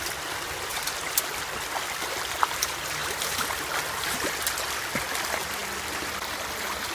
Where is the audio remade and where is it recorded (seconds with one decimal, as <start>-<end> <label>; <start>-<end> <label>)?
0.0-6.9 recorded